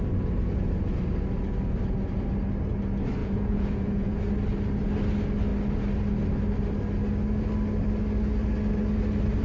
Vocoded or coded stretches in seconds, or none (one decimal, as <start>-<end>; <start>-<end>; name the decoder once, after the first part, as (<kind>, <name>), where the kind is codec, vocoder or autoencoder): 3.2-4.2 (vocoder, Vocos)